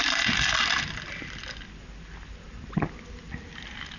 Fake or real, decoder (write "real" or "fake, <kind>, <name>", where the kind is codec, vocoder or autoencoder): real